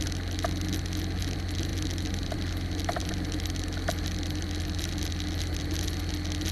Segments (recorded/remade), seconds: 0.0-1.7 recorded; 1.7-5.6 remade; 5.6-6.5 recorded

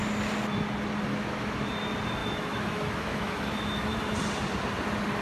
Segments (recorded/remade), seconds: 0.0-1.1 recorded; 1.1-1.7 remade; 1.7-2.2 recorded; 2.2-4.0 remade; 4.0-5.2 recorded

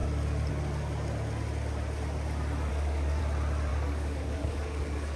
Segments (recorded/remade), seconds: 0.0-2.7 recorded; 2.7-3.2 remade; 3.2-3.7 recorded; 3.7-5.2 remade

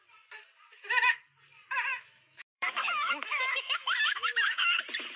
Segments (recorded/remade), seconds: 0.0-1.9 recorded; 1.9-4.8 remade; 4.8-5.2 recorded

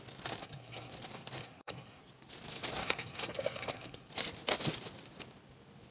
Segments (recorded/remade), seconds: 0.0-0.4 recorded; 0.4-0.9 remade; 0.9-1.4 recorded; 1.4-2.0 remade; 2.0-2.8 recorded; 2.8-4.1 remade; 4.1-5.9 recorded

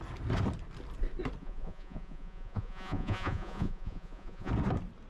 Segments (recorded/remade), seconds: 0.0-1.4 recorded; 1.4-4.5 remade; 4.5-5.1 recorded

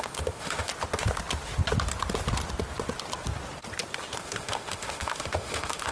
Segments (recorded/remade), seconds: 0.0-0.7 remade; 0.7-4.2 recorded; 4.2-5.9 remade